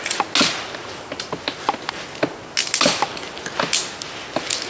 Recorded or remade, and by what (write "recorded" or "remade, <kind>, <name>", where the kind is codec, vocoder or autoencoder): recorded